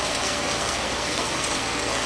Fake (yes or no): yes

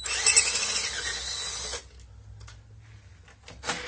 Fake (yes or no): no